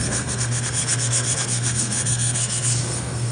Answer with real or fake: fake